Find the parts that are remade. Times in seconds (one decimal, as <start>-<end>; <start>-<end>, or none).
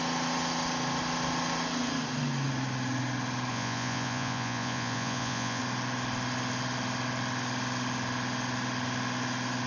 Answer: 3.5-5.6